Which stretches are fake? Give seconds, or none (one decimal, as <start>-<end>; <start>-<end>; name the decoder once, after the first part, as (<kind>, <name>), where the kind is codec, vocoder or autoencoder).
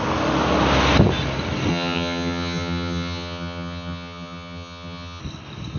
1.7-5.2 (vocoder, HiFi-GAN)